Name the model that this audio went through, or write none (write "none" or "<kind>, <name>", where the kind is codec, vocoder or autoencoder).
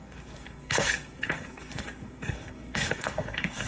codec, SNAC